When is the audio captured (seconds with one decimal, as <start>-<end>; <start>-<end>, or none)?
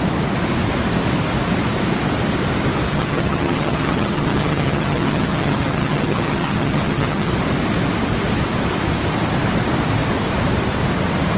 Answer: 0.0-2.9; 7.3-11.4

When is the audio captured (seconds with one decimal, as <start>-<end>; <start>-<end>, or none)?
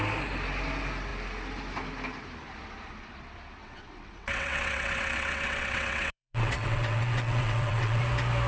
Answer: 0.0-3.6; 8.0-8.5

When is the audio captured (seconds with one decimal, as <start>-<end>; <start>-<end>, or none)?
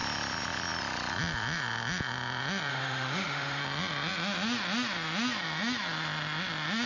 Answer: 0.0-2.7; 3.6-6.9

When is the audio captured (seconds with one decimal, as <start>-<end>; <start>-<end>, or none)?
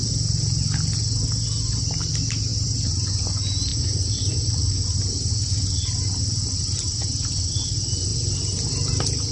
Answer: 0.0-2.5; 3.1-9.3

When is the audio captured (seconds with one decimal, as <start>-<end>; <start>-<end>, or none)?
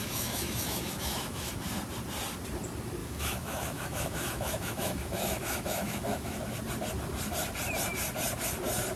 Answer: 1.5-3.0; 6.4-9.0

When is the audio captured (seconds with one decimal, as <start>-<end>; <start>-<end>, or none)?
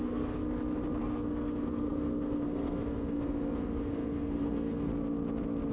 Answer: 0.4-1.0; 4.9-5.7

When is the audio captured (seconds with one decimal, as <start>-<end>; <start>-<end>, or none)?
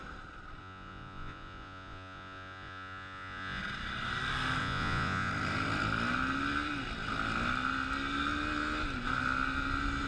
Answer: 0.0-0.6; 3.6-4.6; 5.3-10.1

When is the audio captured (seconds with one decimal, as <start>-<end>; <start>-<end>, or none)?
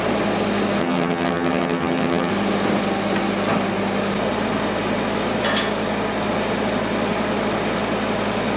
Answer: 0.0-0.8; 2.3-8.6